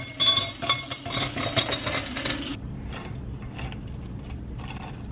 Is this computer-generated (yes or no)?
no